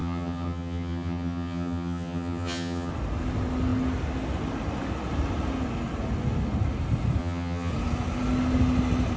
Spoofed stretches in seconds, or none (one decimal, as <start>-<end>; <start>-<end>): 0.0-2.9; 7.2-7.7